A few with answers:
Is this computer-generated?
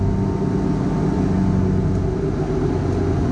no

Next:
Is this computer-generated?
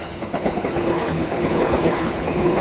yes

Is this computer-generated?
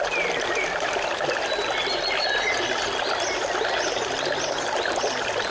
no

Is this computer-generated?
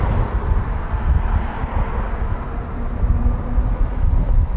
no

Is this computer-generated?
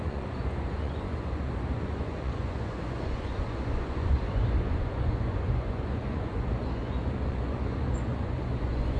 yes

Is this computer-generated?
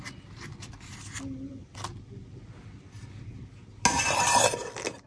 no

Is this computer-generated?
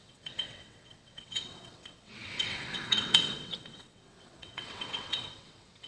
yes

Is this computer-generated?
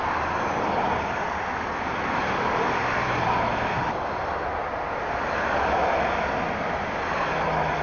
no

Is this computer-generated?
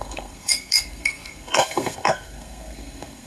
yes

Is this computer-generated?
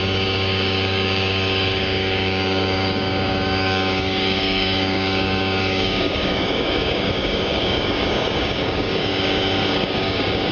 yes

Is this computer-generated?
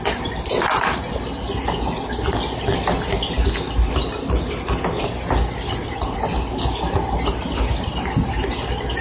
no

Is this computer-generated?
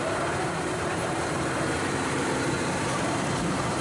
yes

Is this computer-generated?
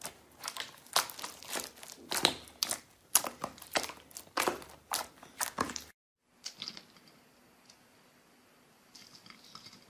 no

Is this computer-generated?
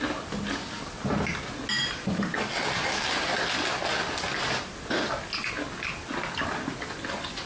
no